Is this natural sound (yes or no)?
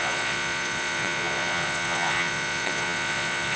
no